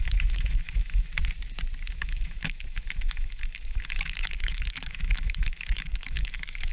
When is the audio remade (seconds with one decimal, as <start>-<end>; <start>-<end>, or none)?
0.0-1.1; 1.9-6.7